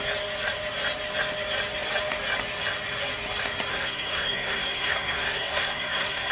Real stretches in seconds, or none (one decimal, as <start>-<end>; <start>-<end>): 0.0-3.7